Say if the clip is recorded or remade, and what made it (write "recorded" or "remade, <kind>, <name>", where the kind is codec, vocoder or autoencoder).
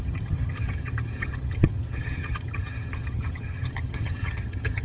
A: remade, vocoder, HiFi-GAN